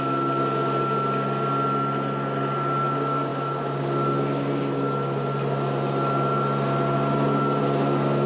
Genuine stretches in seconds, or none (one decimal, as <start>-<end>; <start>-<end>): 0.0-8.3